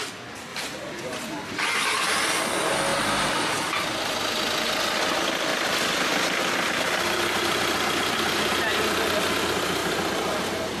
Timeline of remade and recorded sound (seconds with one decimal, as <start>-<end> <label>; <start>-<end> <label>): 0.0-0.5 recorded; 0.5-1.6 remade; 1.6-10.8 recorded